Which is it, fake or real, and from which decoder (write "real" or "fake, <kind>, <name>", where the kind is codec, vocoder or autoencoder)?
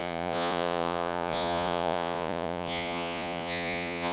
fake, vocoder, Vocos